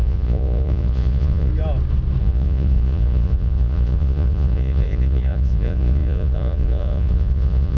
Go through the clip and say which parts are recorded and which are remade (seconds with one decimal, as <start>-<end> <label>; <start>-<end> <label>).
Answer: 0.0-1.5 remade; 1.5-2.2 recorded; 2.2-7.8 remade

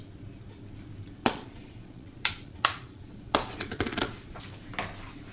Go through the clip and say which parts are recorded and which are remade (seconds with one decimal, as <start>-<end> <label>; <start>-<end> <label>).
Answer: 0.0-1.2 recorded; 1.2-4.4 remade; 4.4-5.3 recorded